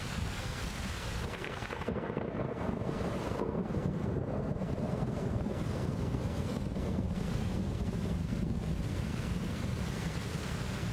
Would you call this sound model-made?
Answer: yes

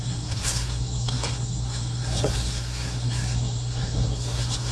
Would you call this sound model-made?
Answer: yes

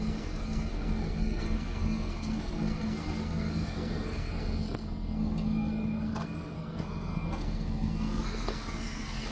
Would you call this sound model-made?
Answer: yes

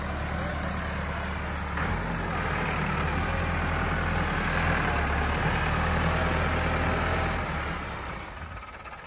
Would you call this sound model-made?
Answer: no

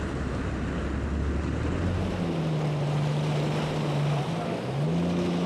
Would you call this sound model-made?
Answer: no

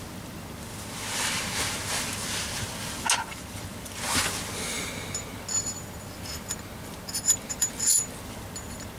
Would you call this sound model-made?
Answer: no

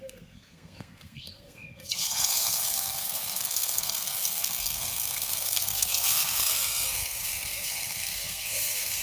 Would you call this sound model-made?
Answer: yes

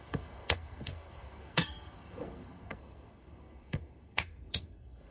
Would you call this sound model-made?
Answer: yes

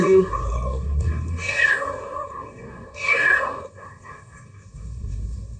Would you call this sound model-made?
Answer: yes